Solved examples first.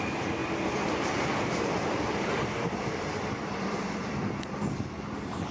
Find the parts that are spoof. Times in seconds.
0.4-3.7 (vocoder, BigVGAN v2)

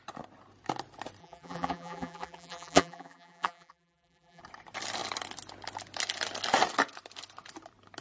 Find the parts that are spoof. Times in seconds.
1.2-4.4 (vocoder, BigVGAN v2)

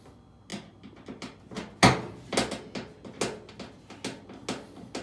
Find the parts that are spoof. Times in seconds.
none

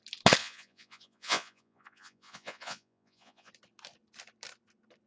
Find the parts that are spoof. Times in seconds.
0.4-3.5 (vocoder, Vocos)

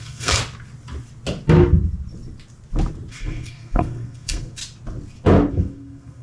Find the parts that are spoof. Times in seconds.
0.0-0.4 (codec, SNAC); 3.1-4.6; 5.5-6.2